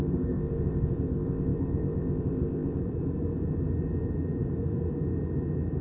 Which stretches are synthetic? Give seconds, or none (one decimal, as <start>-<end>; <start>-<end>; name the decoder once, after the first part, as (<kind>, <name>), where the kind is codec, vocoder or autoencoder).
0.0-2.8 (codec, ZipCodec)

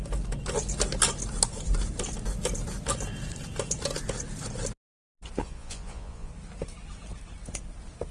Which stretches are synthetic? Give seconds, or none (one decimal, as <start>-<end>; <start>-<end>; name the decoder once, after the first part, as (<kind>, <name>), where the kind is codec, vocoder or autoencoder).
5.4-6.3 (vocoder, Vocos)

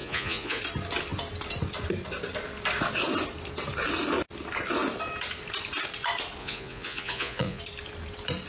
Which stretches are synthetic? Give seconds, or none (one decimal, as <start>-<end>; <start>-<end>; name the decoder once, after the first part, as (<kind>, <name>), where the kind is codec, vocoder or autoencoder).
0.0-0.6 (vocoder, Vocos); 6.4-7.6